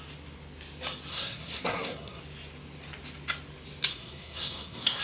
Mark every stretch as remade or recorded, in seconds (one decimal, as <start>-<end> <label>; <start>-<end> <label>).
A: 0.0-1.1 recorded; 1.1-2.2 remade; 2.2-3.9 recorded; 3.9-5.0 remade